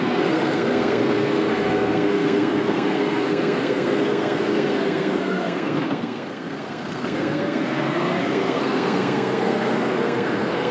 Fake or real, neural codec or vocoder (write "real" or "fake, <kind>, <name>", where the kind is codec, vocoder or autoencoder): fake, codec, SNAC